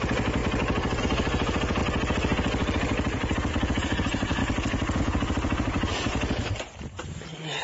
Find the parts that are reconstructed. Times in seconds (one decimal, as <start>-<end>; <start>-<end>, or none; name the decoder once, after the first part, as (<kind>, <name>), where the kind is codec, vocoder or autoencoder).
0.0-0.4 (vocoder, BigVGAN v2); 1.0-1.8; 3.5-4.4; 5.0-7.6